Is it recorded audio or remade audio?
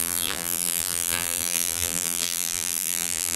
remade